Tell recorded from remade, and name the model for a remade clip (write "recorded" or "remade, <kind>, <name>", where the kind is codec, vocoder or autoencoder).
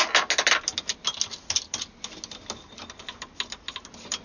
recorded